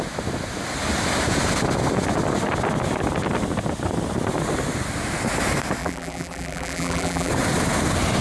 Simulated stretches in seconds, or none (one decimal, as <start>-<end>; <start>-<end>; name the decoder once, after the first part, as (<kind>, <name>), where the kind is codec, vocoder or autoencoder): 5.8-7.3 (vocoder, BigVGAN v2)